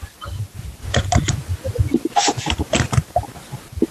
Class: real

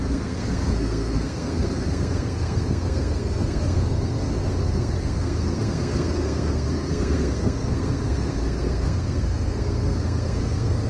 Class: fake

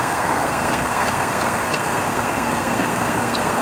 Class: fake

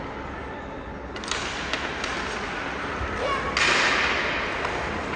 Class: real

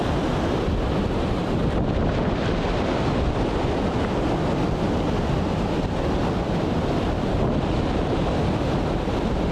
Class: real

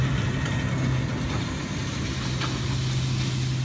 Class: real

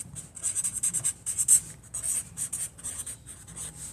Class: real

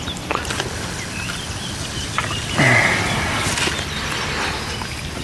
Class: real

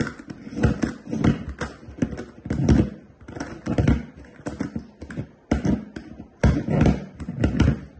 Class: real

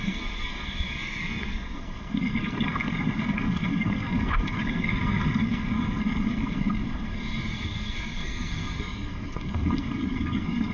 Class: fake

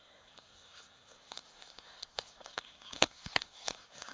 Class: fake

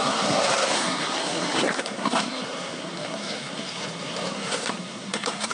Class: fake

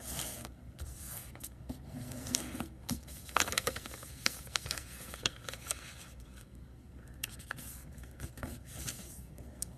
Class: fake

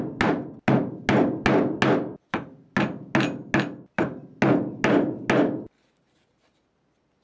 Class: real